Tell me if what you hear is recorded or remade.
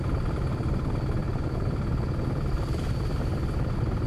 recorded